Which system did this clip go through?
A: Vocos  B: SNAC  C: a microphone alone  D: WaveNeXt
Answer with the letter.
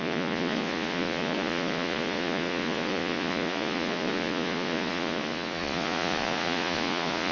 A